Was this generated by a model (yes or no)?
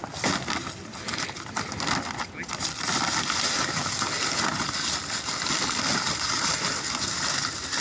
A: no